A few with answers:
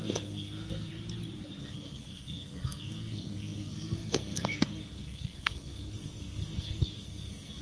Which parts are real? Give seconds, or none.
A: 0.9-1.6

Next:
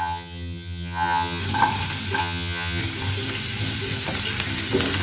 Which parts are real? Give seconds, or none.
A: 1.4-2.2; 2.8-5.0

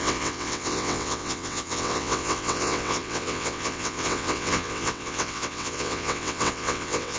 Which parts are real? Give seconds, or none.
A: none

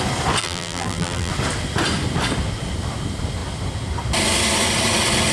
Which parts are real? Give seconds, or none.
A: 0.0-0.4; 1.3-5.3

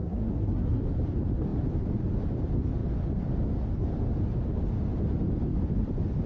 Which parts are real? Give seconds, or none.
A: 0.8-6.3

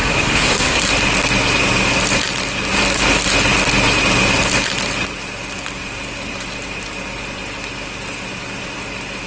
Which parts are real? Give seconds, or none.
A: 0.8-9.3

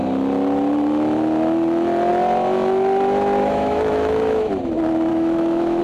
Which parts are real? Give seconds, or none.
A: 0.0-3.4; 4.5-5.1

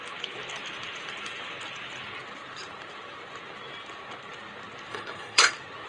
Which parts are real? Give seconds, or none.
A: 0.0-4.9; 5.5-5.9